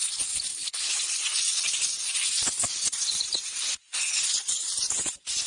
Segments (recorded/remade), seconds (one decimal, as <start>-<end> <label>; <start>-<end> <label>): 0.0-0.5 recorded; 0.5-1.2 remade; 1.2-5.5 recorded